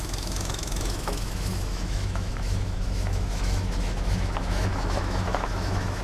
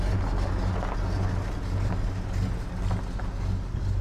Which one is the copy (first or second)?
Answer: first